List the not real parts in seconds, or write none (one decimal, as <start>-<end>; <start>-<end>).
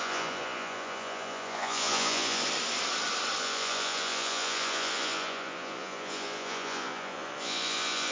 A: 0.0-2.4; 3.4-8.1